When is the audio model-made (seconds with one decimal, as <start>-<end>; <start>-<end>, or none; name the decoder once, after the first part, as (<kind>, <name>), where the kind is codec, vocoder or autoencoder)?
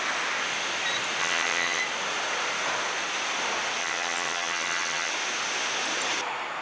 1.2-1.8 (vocoder, HiFi-GAN); 3.8-5.1